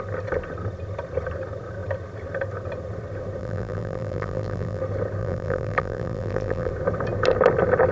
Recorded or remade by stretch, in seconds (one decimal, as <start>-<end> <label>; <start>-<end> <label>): 0.0-3.4 recorded; 3.4-4.8 remade; 4.8-5.2 recorded; 5.2-6.7 remade; 6.7-7.9 recorded